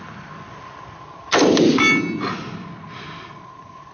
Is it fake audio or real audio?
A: real